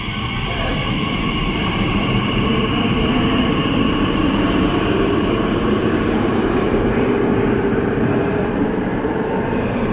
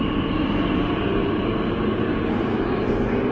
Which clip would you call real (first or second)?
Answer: second